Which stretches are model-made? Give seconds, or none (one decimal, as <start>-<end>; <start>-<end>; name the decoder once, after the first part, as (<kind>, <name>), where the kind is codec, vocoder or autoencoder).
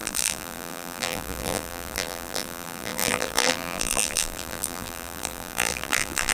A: 0.0-6.3 (vocoder, BigVGAN v2)